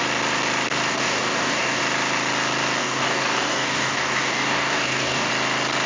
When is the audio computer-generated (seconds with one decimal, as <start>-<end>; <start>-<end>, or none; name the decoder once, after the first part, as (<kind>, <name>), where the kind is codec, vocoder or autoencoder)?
0.9-1.8 (codec, DAC); 2.8-5.3